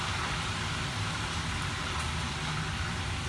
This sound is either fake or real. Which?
real